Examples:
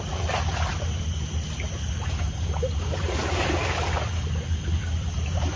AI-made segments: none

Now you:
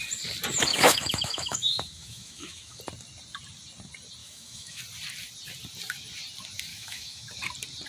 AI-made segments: 0.7-2.8 (autoencoder, DAC-VAE); 4.2-4.8; 6.7-7.3

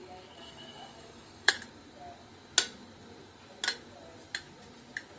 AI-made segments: 0.0-1.5 (codec, DAC)

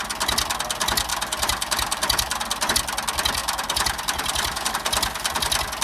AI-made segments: 1.1-2.7 (vocoder, BigVGAN v2); 3.4-4.7